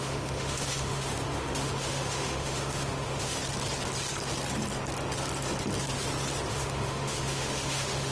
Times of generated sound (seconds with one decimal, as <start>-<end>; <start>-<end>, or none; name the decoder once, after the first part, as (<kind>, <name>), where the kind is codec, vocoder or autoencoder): 0.0-3.4 (autoencoder, DAC-VAE); 6.5-8.1

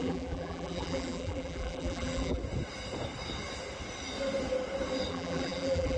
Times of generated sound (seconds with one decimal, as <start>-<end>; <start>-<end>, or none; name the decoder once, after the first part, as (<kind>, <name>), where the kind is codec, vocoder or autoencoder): 0.0-2.4 (vocoder, BigVGAN v2); 5.1-6.0

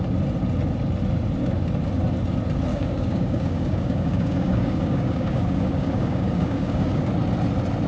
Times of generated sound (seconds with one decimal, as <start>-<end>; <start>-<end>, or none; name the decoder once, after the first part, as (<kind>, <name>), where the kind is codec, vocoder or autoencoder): 2.7-7.1 (codec, DAC)

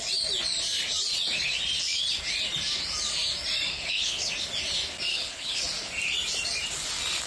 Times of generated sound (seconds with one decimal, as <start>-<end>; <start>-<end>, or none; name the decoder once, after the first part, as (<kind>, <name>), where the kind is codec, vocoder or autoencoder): 3.7-4.3 (codec, HILCodec); 5.1-5.6